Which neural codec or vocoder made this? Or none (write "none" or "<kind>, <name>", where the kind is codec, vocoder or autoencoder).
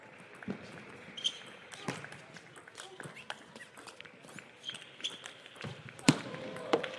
vocoder, BigVGAN v2